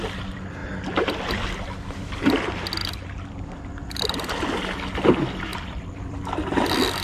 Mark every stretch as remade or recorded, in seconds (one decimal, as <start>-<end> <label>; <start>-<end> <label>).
0.0-5.5 recorded; 5.5-6.2 remade; 6.2-7.0 recorded